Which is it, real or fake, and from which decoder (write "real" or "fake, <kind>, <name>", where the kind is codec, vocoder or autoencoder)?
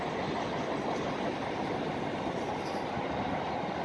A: real